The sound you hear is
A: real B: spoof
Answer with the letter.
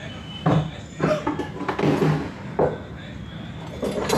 A